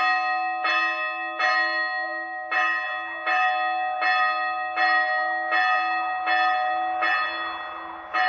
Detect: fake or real real